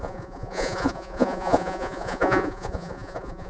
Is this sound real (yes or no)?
no